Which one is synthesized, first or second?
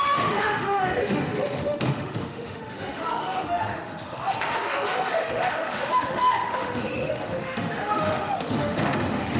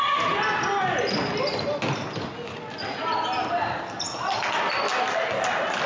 first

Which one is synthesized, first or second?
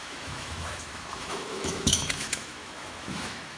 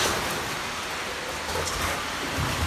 first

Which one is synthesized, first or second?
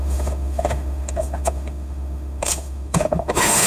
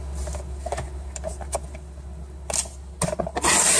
first